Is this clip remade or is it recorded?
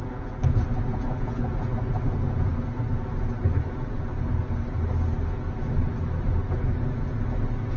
recorded